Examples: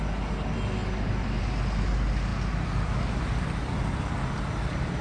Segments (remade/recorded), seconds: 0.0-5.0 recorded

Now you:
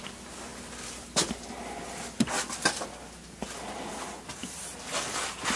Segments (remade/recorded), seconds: 0.0-5.6 recorded

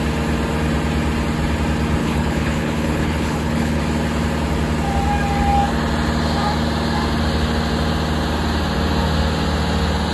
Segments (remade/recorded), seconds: 0.0-2.0 recorded; 2.0-3.8 remade; 3.8-10.1 recorded